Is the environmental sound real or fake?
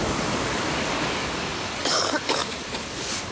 fake